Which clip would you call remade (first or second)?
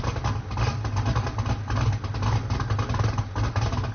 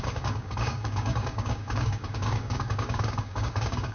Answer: second